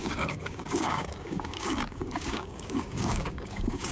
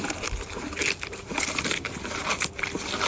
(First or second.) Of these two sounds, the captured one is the second